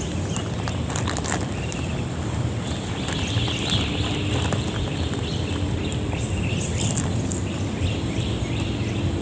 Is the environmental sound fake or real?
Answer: fake